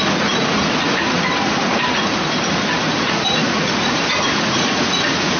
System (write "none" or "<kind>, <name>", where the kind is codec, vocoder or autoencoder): vocoder, Vocos